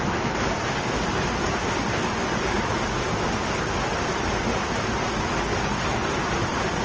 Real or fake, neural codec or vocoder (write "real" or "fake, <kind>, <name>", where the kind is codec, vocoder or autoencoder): real